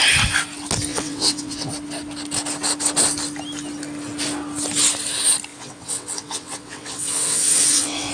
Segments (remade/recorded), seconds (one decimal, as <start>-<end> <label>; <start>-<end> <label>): 0.0-0.9 recorded; 0.9-1.7 remade; 1.7-5.5 recorded; 5.5-8.1 remade

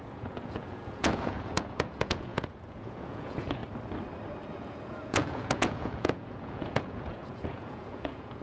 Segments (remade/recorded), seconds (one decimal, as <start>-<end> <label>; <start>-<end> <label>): 0.0-3.6 remade; 3.6-4.5 recorded; 4.5-8.4 remade